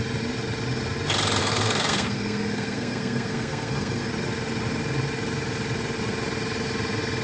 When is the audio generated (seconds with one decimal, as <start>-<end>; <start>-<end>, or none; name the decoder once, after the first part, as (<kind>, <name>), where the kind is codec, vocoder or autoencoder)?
1.4-4.1 (codec, SNAC)